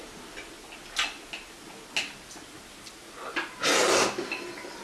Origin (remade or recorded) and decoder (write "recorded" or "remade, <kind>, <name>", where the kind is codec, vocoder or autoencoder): recorded